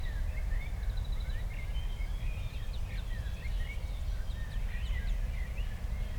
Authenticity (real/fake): real